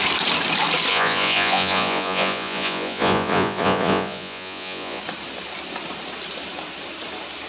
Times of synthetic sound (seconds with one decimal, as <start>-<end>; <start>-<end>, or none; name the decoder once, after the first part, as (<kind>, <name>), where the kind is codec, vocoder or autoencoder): 0.9-5.0 (vocoder, Vocos)